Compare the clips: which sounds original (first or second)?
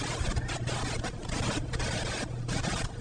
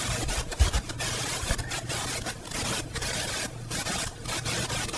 first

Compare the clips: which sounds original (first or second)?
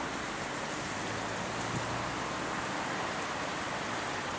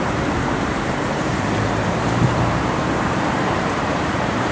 first